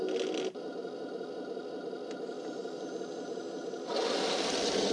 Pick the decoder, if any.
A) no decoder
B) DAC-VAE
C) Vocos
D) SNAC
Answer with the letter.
A